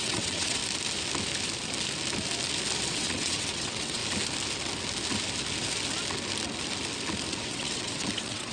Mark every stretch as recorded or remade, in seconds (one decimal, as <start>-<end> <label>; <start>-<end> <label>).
0.0-0.6 remade; 0.6-2.9 recorded; 2.9-4.0 remade; 4.0-7.3 recorded; 7.3-8.5 remade